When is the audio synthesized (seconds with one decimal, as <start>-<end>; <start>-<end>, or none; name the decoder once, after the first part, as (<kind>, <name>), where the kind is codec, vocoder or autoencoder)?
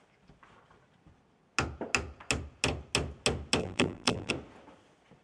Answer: 3.6-4.3 (vocoder, BigVGAN v2)